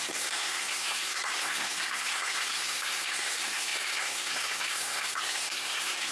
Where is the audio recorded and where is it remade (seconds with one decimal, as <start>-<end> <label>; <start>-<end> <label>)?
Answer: 0.0-6.1 remade